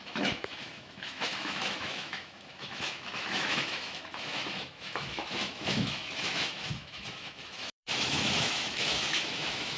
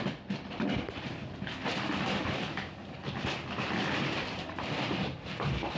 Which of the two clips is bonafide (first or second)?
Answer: second